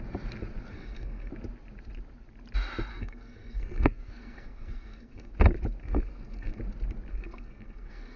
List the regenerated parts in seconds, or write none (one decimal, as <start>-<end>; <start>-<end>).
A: 0.7-1.3; 2.9-5.3; 5.8-6.6; 7.1-8.2